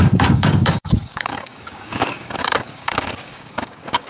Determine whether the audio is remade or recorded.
remade